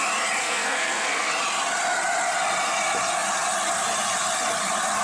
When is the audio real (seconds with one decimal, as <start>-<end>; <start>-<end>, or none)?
0.0-0.4; 1.3-5.0